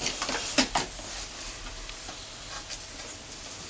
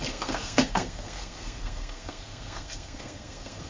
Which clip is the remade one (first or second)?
second